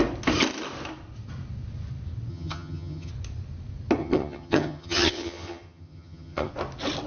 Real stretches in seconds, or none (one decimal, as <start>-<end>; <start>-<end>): 0.0-2.3; 3.1-4.0; 6.5-7.1